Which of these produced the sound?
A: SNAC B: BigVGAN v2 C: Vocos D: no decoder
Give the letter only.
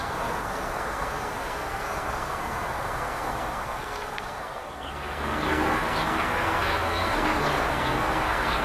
A